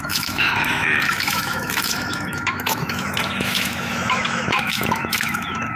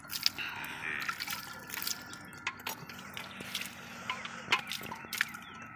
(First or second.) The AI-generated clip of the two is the first